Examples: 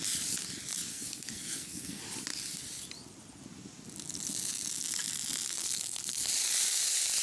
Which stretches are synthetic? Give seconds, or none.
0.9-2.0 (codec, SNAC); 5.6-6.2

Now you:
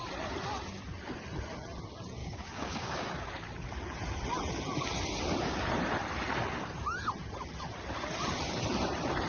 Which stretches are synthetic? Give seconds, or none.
2.2-3.0 (codec, DAC)

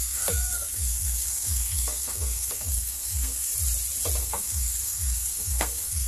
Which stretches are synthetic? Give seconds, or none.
0.0-3.5 (codec, SNAC); 4.2-6.1

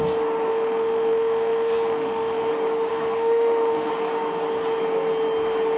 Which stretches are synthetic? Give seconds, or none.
0.5-2.5 (autoencoder, DAC-VAE); 2.9-3.9

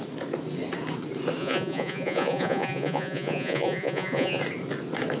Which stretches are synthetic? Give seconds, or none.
1.4-4.4 (vocoder, Vocos)